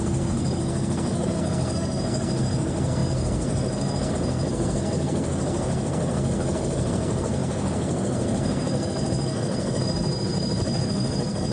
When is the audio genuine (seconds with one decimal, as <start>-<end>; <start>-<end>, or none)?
none